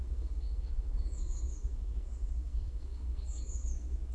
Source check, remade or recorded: remade